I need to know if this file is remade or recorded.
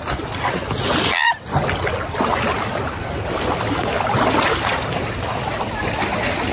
recorded